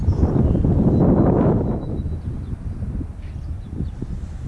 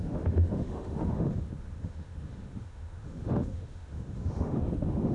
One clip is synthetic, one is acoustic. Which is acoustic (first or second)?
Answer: first